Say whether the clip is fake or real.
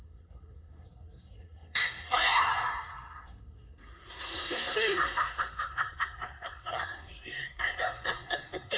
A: fake